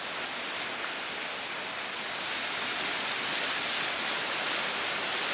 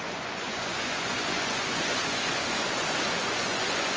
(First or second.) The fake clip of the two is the second